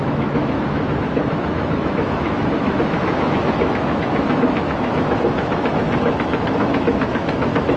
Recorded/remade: remade